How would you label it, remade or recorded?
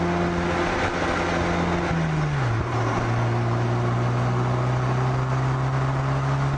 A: recorded